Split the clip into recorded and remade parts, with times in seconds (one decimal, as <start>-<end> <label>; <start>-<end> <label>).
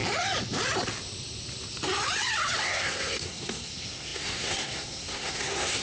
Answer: 0.0-2.6 recorded; 2.6-5.8 remade